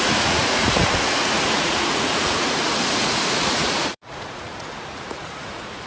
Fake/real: fake